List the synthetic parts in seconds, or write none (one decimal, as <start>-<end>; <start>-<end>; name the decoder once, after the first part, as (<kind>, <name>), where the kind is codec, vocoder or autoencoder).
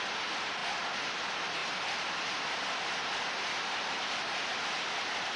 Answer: none